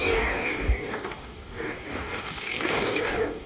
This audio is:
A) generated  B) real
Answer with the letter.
A